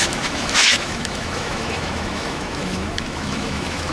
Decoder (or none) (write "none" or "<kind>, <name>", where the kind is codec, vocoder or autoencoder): autoencoder, DAC-VAE